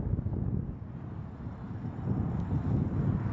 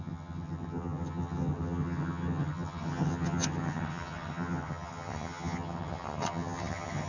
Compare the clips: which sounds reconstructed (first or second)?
second